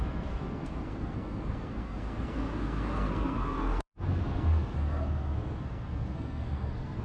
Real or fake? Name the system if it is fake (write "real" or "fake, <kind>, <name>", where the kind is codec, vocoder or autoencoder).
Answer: fake, codec, SNAC